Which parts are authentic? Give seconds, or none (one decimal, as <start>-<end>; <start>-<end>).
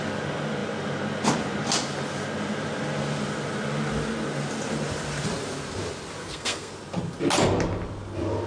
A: 0.0-6.2; 6.7-8.5